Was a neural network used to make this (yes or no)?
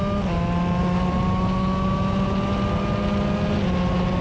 no